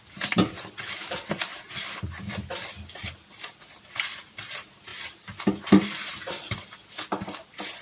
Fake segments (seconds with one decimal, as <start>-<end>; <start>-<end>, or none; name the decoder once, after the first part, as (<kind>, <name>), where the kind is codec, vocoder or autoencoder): 0.0-1.5 (vocoder, BigVGAN v2); 2.0-7.8